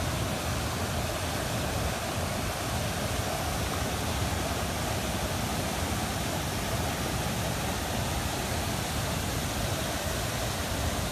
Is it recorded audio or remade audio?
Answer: recorded